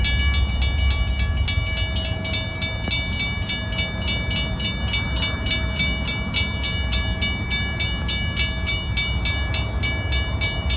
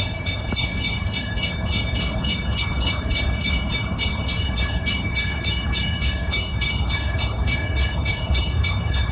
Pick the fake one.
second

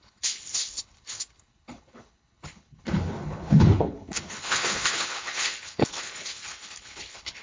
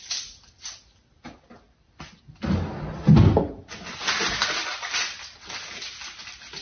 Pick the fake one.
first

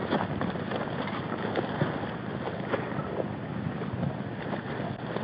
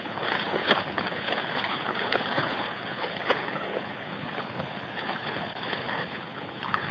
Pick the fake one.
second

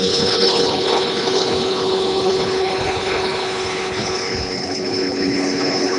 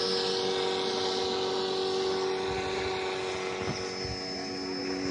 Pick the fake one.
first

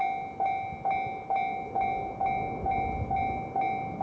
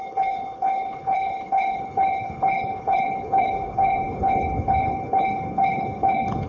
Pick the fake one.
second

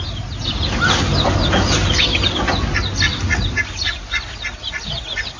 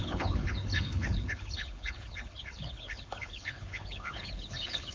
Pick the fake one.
second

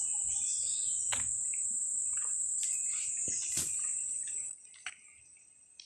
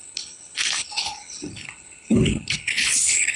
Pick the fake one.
second